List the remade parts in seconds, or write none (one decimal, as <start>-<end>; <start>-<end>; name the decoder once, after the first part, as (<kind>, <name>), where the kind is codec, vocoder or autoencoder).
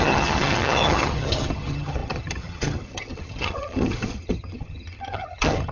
0.0-5.7 (vocoder, HiFi-GAN)